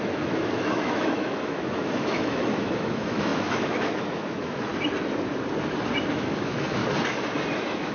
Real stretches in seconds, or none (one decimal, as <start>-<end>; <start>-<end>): 4.7-6.1; 6.8-7.5